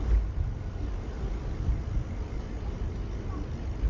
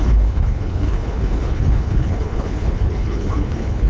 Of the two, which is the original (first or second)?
first